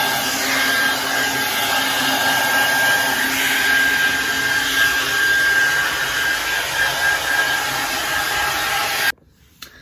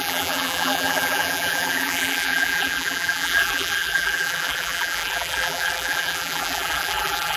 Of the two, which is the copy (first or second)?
second